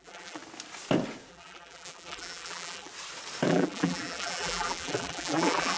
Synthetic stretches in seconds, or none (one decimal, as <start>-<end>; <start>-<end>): 0.0-0.4; 1.3-2.9; 3.5-5.8